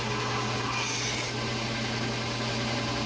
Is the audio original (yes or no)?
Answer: yes